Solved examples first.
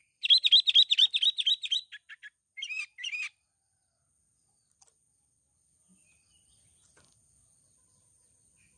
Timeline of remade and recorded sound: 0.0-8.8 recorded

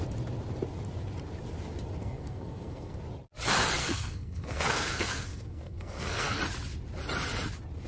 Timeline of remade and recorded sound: 0.0-2.0 recorded; 2.0-3.0 remade; 3.0-3.8 recorded; 3.8-6.4 remade; 6.4-7.9 recorded

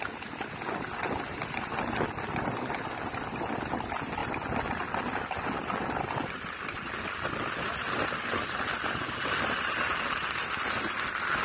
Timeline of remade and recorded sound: 0.0-11.4 recorded

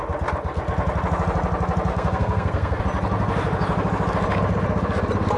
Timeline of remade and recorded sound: 0.0-1.9 recorded; 1.9-2.8 remade; 2.8-5.4 recorded

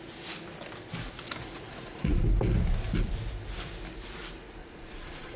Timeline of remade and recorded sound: 0.0-1.4 recorded; 1.4-2.2 remade; 2.2-4.6 recorded; 4.6-5.4 remade

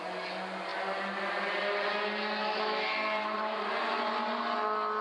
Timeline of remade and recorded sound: 0.0-2.4 recorded; 2.4-3.7 remade; 3.7-5.0 recorded

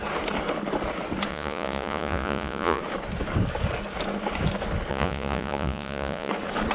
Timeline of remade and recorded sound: 0.0-1.3 recorded; 1.3-2.8 remade; 2.8-4.9 recorded; 4.9-6.3 remade; 6.3-6.7 recorded